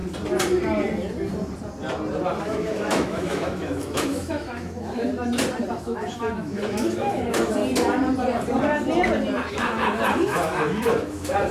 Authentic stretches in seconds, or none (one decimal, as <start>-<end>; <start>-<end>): 0.0-2.4; 5.1-5.7; 7.6-9.5